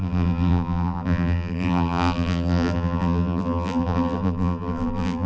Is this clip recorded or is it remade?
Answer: remade